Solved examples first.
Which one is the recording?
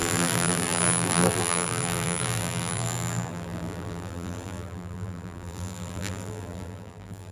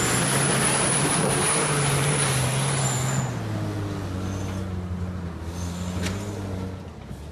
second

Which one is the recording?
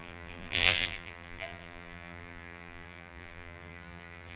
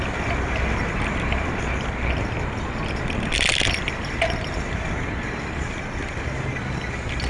second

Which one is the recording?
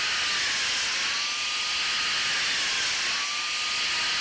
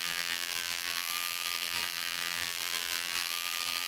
first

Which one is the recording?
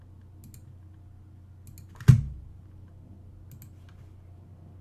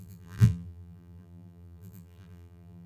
first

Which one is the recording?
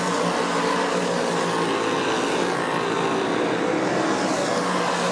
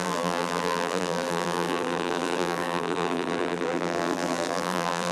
first